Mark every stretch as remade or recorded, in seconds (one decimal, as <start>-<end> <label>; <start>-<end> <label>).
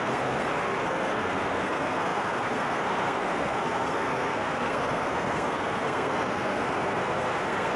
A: 0.0-7.8 remade